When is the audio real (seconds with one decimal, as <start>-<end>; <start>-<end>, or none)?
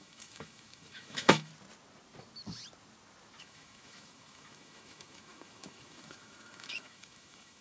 1.5-3.4